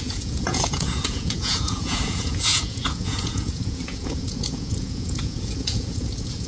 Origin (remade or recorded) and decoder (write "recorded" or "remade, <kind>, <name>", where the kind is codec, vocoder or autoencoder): remade, vocoder, Vocos